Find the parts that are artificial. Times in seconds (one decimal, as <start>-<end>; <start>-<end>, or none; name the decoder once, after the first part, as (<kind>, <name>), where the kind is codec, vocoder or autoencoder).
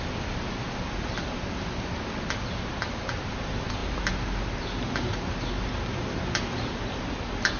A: none